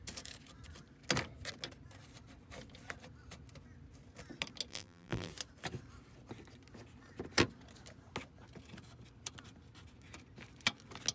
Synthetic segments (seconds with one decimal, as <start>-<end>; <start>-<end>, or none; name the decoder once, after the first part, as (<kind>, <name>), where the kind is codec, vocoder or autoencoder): 4.7-5.3 (vocoder, BigVGAN v2)